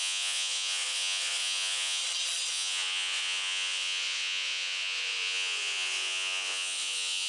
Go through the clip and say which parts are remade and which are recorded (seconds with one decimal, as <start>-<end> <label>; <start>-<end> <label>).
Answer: 0.0-2.0 remade; 2.0-2.5 recorded; 2.5-7.3 remade